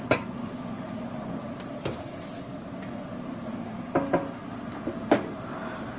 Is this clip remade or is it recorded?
recorded